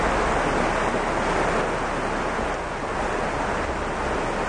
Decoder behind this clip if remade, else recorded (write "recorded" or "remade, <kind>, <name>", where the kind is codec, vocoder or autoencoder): recorded